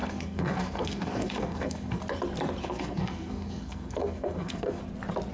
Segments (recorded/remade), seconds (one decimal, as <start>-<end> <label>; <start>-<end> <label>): 0.0-2.0 remade; 2.0-2.6 recorded; 2.6-4.8 remade; 4.8-5.3 recorded